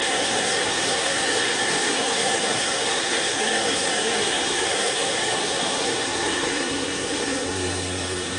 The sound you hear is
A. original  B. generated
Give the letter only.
B